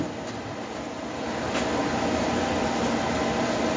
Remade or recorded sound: recorded